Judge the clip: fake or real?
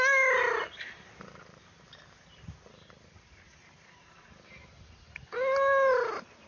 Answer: real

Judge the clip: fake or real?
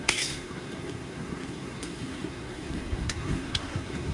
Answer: fake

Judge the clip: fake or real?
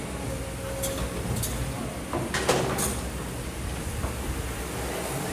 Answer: real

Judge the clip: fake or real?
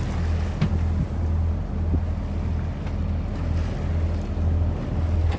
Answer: real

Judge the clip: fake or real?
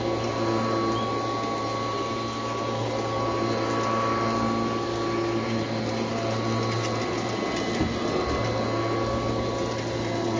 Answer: real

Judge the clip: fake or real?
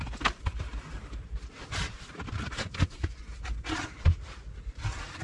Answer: real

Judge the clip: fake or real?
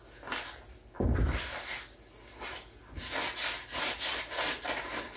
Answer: real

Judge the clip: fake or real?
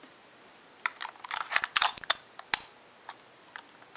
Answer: real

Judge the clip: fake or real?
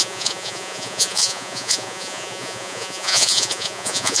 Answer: fake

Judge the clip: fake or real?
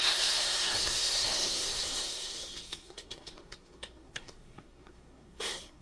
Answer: fake